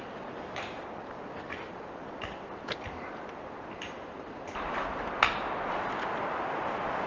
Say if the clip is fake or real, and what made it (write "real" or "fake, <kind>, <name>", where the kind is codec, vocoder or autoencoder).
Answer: real